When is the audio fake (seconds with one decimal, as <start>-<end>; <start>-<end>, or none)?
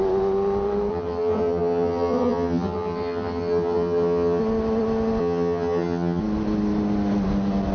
0.9-4.4; 5.2-6.2